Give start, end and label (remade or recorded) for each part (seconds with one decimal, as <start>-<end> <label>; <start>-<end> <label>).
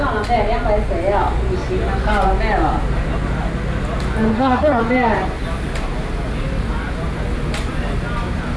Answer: 0.0-4.3 recorded; 4.3-4.8 remade; 4.8-8.6 recorded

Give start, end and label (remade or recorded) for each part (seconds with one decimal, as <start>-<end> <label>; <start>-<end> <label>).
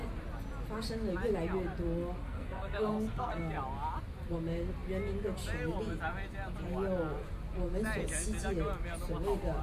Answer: 0.0-2.2 recorded; 2.2-3.4 remade; 3.4-9.6 recorded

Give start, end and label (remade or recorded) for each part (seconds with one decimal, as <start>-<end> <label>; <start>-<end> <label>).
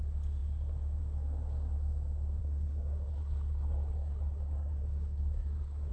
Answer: 0.0-2.4 recorded; 2.4-5.9 remade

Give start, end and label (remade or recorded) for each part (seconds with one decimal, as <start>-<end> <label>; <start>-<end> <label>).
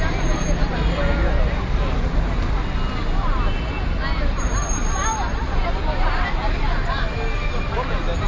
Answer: 0.0-8.3 recorded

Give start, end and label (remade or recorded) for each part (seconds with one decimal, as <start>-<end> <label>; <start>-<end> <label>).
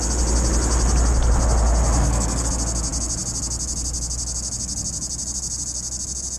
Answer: 0.0-2.0 recorded; 2.0-2.5 remade; 2.5-6.4 recorded